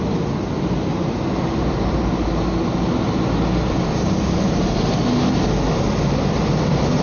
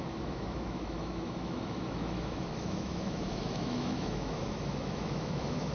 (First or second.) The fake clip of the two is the second